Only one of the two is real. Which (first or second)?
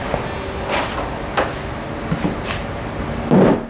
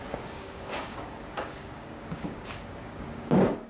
first